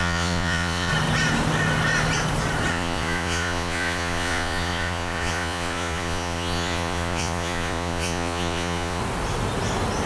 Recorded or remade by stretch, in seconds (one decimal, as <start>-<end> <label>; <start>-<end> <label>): 0.0-0.9 remade; 0.9-2.7 recorded; 2.7-9.0 remade; 9.0-10.1 recorded